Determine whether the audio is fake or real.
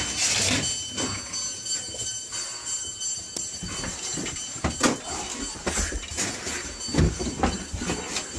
real